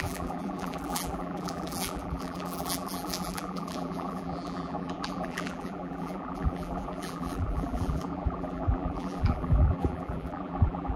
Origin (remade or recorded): remade